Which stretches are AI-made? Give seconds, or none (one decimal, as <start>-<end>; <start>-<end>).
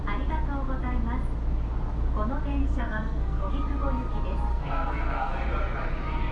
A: 2.6-3.5; 4.5-5.3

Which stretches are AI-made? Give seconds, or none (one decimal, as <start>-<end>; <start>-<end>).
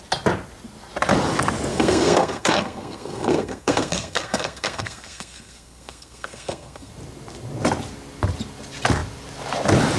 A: 1.7-6.9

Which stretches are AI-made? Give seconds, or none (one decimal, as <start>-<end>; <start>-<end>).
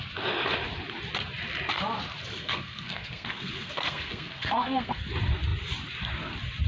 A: 2.3-5.0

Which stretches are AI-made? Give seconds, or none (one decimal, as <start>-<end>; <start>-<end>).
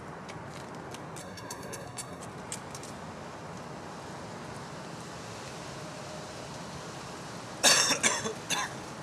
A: 1.2-2.2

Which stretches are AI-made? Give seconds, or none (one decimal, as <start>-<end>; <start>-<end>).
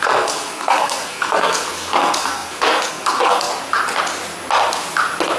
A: 0.0-3.5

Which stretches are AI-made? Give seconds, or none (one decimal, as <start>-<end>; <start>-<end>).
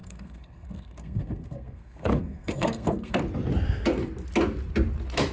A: 0.0-3.2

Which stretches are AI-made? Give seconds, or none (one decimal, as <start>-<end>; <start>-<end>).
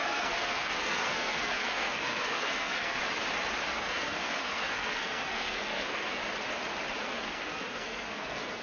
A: 0.0-3.0; 3.6-6.2; 7.0-8.6